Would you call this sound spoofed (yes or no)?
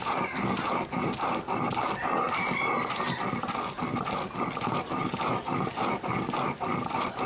no